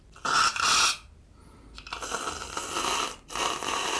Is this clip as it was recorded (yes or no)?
yes